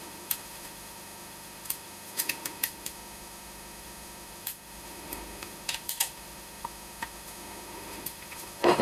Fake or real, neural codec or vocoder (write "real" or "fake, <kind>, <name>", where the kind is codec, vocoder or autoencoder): fake, autoencoder, DAC-VAE